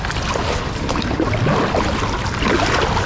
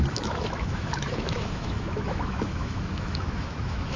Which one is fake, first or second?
second